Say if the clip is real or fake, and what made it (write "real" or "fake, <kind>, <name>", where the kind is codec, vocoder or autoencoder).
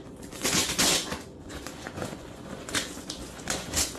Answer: fake, vocoder, Vocos